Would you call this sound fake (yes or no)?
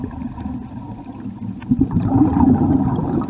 no